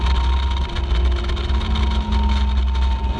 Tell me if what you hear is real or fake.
real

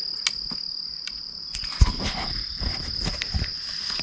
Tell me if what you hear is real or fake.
real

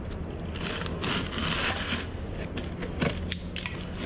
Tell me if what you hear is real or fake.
real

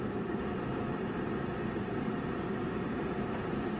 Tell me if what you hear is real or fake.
real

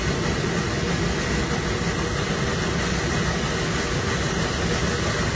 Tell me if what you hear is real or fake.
real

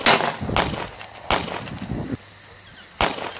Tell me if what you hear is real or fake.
real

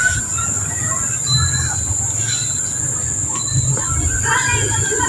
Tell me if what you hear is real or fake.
real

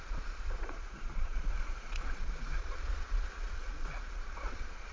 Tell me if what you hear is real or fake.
fake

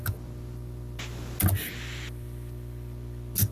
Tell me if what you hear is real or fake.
real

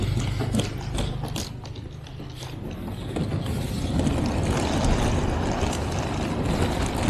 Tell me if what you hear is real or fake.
real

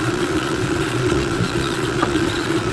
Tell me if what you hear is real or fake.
fake